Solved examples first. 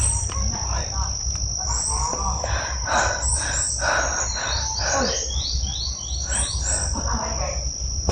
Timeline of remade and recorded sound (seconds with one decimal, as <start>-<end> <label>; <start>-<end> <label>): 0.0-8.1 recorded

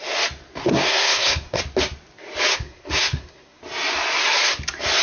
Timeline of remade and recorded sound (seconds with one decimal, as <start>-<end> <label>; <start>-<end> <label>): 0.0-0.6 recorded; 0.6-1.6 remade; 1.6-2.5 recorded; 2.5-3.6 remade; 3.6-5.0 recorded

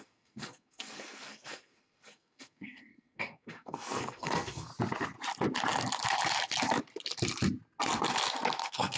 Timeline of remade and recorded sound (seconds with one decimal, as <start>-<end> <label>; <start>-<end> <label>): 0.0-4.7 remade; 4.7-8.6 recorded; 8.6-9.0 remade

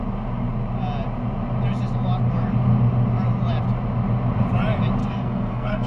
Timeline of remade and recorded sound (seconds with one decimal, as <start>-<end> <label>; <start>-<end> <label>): 0.0-5.0 recorded; 5.0-5.9 remade